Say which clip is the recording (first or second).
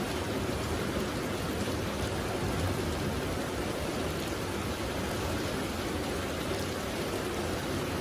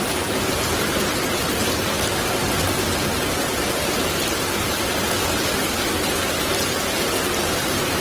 second